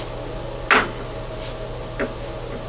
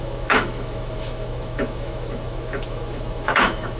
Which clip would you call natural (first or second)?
first